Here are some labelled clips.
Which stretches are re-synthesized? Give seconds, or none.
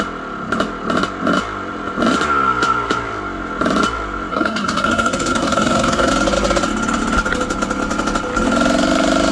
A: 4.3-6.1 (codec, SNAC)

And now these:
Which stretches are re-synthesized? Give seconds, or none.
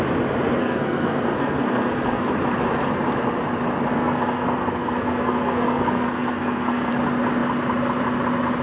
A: 0.6-2.3 (codec, SNAC); 3.9-6.9